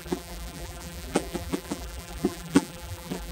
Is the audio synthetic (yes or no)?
yes